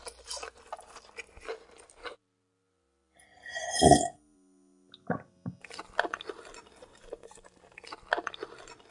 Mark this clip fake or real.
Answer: real